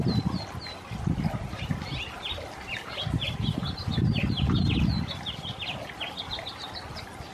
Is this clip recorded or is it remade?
recorded